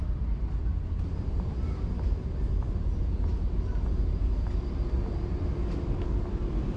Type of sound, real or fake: real